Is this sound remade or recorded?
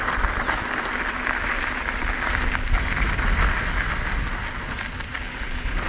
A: recorded